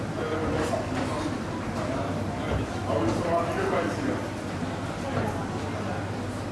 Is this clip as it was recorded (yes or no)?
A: yes